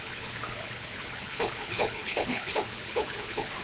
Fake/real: fake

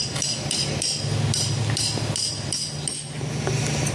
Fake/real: real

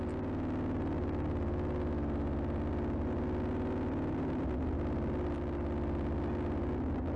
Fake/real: real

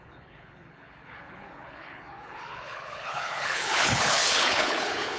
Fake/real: fake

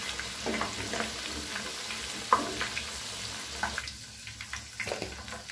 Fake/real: real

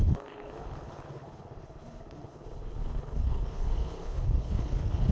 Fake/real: fake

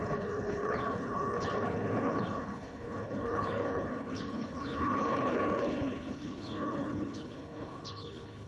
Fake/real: fake